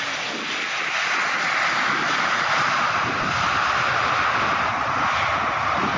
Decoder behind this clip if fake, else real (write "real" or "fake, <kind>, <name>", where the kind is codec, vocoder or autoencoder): real